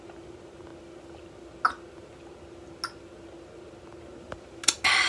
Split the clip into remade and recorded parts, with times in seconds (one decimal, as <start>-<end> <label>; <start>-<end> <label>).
0.0-5.1 recorded